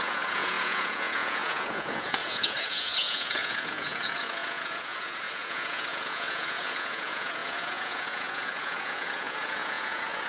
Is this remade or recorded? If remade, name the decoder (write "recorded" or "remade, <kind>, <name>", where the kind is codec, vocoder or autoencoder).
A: remade, vocoder, Vocos